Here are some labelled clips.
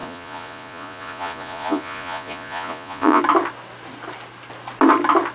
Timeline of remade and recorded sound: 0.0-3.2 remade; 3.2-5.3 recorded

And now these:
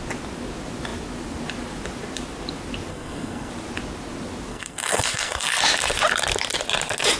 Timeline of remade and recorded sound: 0.0-2.9 recorded; 2.9-3.5 remade; 3.5-4.5 recorded; 4.5-5.5 remade; 5.5-7.2 recorded

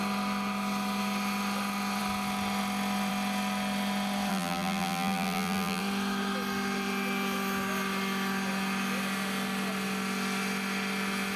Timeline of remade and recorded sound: 0.0-4.3 recorded; 4.3-5.8 remade; 5.8-11.4 recorded

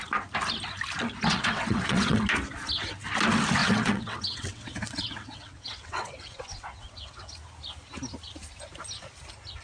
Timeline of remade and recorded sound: 0.0-1.3 recorded; 1.3-2.2 remade; 2.2-3.6 recorded; 3.6-7.3 remade; 7.3-9.6 recorded

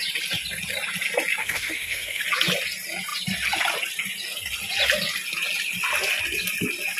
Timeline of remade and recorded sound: 0.0-1.4 recorded; 1.4-2.2 remade; 2.2-7.0 recorded

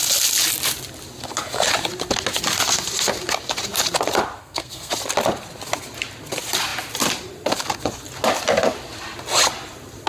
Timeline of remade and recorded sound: 0.0-4.4 recorded; 4.4-4.9 remade; 4.9-10.1 recorded